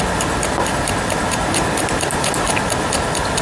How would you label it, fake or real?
real